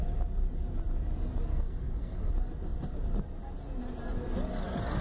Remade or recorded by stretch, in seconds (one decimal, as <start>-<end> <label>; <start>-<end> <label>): 0.0-1.5 recorded; 1.5-2.3 remade; 2.3-5.0 recorded